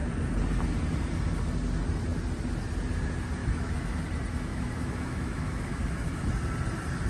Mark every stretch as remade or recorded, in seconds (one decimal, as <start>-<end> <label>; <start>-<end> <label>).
0.0-3.4 recorded; 3.4-4.0 remade; 4.0-4.5 recorded; 4.5-6.3 remade; 6.3-7.1 recorded